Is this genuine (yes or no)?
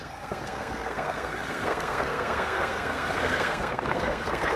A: no